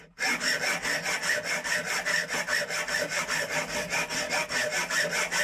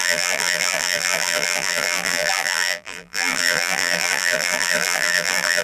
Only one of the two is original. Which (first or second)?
first